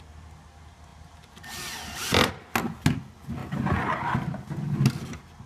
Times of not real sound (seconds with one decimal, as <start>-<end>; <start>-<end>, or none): 0.9-2.3